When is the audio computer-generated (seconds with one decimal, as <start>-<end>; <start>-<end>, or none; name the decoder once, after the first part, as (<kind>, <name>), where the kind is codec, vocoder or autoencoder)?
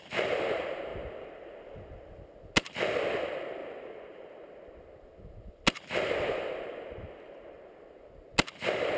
none